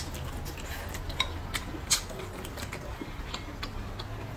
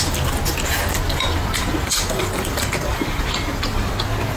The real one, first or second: first